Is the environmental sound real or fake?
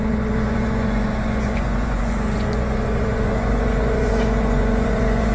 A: fake